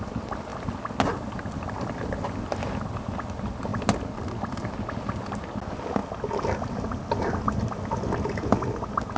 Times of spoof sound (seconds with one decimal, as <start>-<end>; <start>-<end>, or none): none